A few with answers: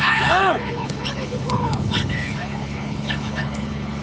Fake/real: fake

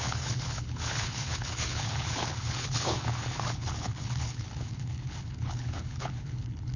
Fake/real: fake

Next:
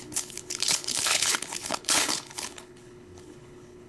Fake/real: fake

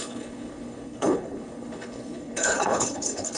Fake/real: fake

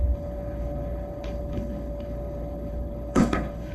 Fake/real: fake